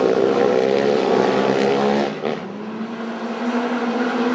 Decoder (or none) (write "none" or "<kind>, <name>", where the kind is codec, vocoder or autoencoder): none